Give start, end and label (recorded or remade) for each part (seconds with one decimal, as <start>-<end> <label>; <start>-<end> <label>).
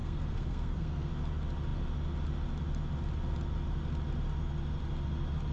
0.0-1.1 remade; 1.1-5.5 recorded